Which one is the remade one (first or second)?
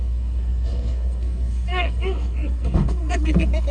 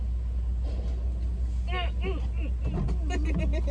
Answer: first